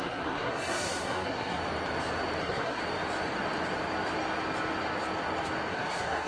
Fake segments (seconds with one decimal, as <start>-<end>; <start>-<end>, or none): 0.0-1.6; 2.4-2.8; 5.7-6.3